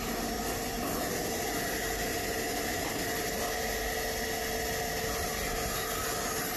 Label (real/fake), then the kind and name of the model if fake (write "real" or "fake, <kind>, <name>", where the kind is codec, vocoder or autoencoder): real